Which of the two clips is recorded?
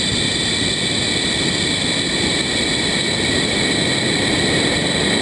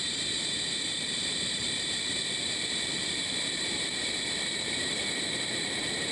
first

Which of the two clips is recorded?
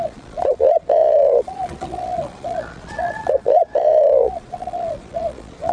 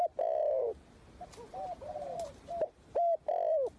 second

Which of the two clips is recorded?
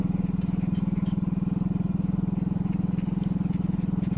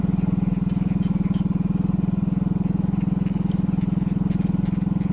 second